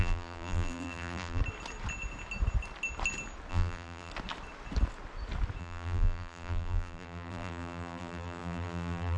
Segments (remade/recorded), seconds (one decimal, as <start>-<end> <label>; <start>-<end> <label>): 0.0-1.4 remade; 1.4-3.5 recorded; 3.5-4.1 remade; 4.1-5.6 recorded; 5.6-9.2 remade